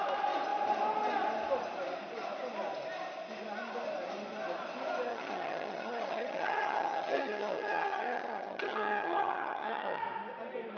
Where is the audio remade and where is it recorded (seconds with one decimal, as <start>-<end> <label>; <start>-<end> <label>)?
0.0-5.1 recorded; 5.1-10.0 remade; 10.0-10.8 recorded